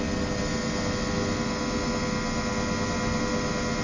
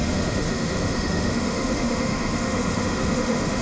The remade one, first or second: second